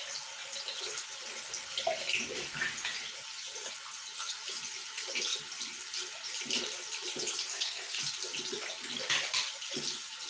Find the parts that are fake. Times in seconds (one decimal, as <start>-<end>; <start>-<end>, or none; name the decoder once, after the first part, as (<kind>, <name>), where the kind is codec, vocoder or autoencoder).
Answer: 7.5-8.0 (codec, SNAC)